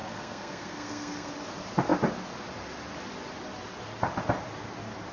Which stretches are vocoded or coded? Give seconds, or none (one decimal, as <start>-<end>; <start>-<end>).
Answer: 0.0-1.3